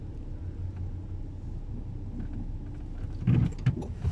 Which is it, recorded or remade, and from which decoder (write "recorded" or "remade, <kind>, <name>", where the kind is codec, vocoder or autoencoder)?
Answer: recorded